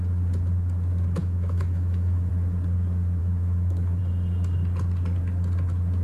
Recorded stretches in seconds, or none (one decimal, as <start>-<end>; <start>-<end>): 0.0-1.2; 2.3-3.2; 4.0-6.0